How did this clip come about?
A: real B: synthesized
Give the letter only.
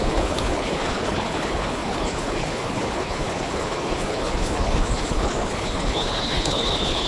B